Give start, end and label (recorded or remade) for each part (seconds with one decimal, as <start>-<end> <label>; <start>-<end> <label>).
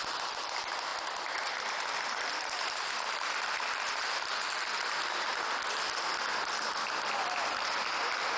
0.0-0.9 recorded; 0.9-4.1 remade; 4.1-8.4 recorded